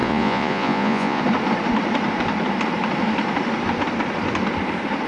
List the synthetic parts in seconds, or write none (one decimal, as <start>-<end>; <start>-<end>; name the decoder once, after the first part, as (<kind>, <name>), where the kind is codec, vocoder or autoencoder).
0.0-1.2 (vocoder, Vocos)